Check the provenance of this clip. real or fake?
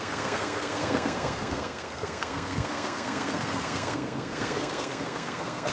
fake